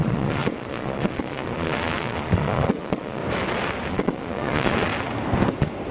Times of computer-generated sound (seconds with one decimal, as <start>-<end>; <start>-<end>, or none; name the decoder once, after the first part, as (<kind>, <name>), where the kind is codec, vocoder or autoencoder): 0.0-3.2 (vocoder, Vocos); 3.9-4.9